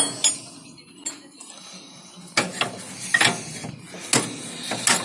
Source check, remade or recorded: recorded